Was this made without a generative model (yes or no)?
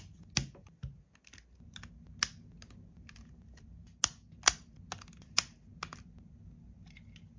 yes